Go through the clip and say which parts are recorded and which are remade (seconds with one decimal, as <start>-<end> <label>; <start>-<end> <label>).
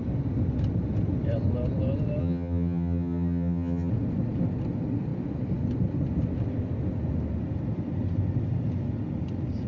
0.0-2.2 recorded; 2.2-3.9 remade; 3.9-9.7 recorded